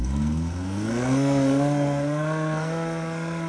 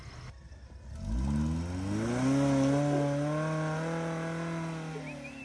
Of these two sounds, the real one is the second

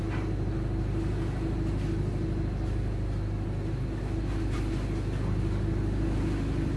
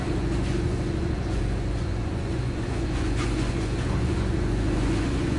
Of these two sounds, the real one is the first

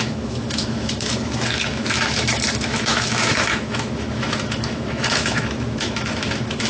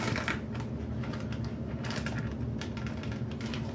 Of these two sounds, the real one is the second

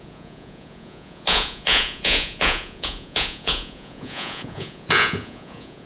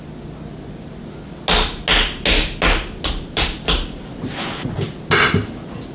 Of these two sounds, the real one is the second